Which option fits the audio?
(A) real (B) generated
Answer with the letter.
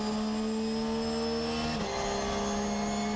A